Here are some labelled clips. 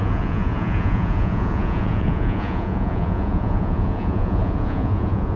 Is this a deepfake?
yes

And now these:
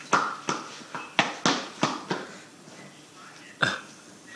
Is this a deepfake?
no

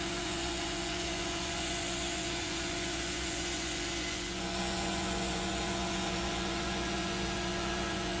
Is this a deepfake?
yes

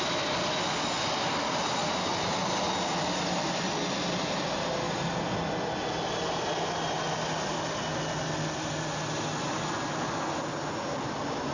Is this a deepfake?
no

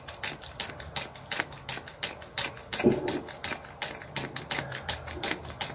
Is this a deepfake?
no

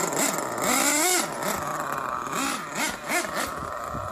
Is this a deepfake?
no